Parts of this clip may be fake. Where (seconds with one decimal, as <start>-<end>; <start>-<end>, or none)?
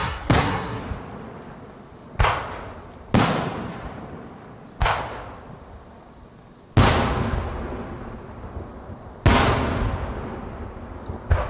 0.0-0.8